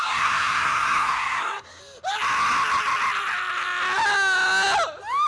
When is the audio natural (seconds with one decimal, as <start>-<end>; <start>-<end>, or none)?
1.8-5.3